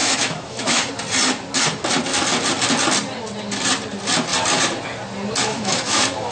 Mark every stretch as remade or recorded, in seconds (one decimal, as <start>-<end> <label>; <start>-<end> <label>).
0.0-0.9 remade; 0.9-5.4 recorded; 5.4-6.3 remade